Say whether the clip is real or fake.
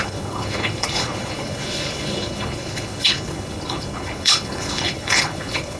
fake